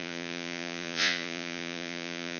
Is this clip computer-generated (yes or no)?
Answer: yes